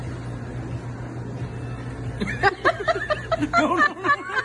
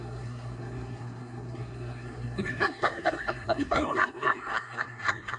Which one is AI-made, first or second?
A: second